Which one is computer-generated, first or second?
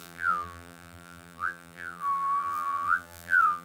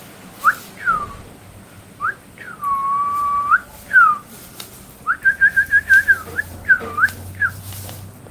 first